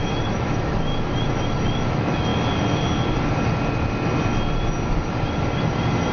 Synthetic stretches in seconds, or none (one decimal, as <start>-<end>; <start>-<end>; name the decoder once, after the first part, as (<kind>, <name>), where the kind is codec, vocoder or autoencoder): 0.0-0.9 (autoencoder, DAC-VAE); 1.9-2.3

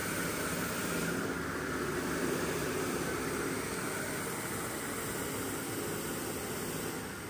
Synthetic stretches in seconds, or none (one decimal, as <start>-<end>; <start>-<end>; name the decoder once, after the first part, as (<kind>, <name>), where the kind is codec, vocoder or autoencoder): none

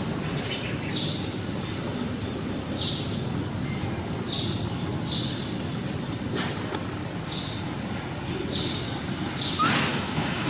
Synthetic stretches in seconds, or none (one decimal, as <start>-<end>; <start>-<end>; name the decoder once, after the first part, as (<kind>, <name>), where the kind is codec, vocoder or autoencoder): 9.9-10.5 (autoencoder, DAC-VAE)

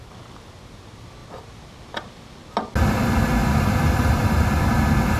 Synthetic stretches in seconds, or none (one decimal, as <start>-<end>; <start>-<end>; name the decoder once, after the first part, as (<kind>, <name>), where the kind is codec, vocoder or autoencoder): none

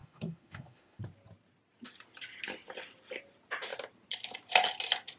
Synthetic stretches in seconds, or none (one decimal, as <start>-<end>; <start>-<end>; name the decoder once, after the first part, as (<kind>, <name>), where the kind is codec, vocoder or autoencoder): 0.0-1.0 (autoencoder, DAC-VAE)